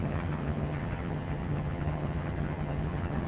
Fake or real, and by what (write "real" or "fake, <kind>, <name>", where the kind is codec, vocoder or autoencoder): fake, vocoder, HiFi-GAN